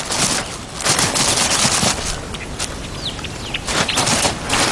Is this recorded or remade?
recorded